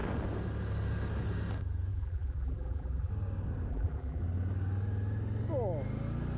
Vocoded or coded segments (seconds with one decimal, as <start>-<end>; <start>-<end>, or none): 1.9-3.1; 3.7-4.2